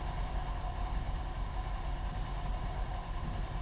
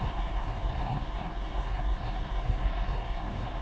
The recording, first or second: first